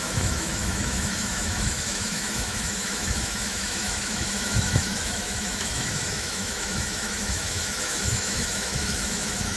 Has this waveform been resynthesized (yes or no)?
yes